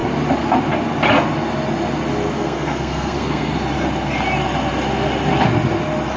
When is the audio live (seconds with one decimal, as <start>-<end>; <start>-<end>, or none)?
0.0-2.3; 3.5-6.2